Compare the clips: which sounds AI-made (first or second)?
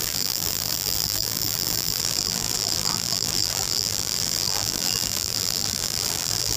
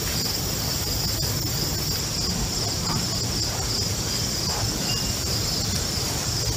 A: first